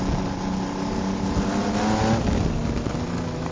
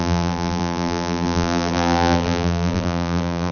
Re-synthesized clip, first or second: second